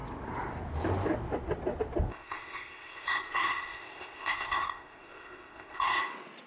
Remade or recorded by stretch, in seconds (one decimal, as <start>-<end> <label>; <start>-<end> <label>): 0.0-2.1 recorded; 2.1-6.0 remade; 6.0-6.5 recorded